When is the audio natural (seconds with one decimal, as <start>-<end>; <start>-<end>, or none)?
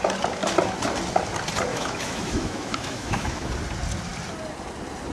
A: 0.0-1.7; 3.5-5.1